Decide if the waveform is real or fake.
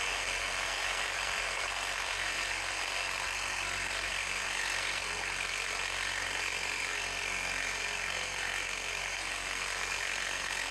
fake